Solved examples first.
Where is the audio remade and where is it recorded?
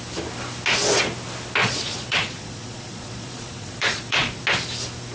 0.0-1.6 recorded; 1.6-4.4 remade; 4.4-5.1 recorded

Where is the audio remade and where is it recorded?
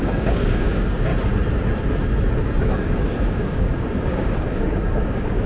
0.0-1.1 remade; 1.1-2.6 recorded; 2.6-5.5 remade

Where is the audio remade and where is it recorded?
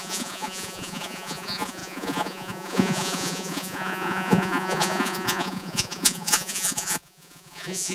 0.0-7.9 remade